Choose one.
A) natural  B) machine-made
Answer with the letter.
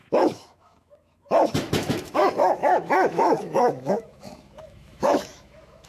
B